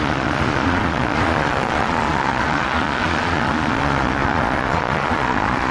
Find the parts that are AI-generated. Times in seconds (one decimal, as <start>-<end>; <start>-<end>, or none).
0.0-5.7